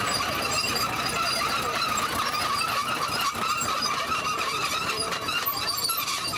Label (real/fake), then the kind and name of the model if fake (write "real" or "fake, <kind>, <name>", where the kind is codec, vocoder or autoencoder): fake, vocoder, BigVGAN v2